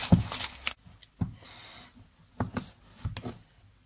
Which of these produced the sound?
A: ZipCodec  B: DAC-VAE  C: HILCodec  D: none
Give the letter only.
D